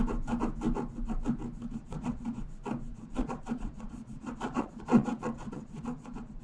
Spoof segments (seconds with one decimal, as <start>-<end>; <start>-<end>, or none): 1.8-2.4; 2.9-6.4